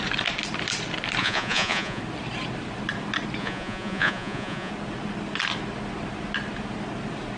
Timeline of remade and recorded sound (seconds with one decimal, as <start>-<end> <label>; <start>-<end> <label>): 0.0-1.2 recorded; 1.2-2.0 remade; 2.0-3.4 recorded; 3.4-4.7 remade; 4.7-7.4 recorded